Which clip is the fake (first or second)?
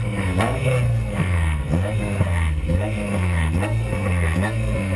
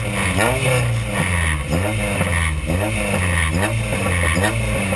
first